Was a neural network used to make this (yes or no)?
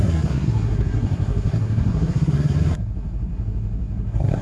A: yes